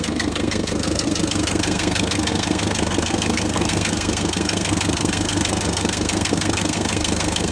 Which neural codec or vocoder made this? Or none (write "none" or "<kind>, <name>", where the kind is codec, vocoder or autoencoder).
codec, SNAC